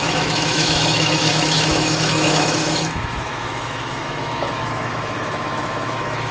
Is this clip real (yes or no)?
no